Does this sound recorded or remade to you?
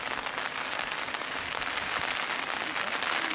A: recorded